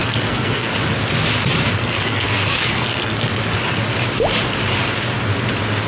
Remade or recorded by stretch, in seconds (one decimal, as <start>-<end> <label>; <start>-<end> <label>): 0.0-0.7 remade; 0.7-1.7 recorded; 1.7-3.3 remade; 3.3-5.9 recorded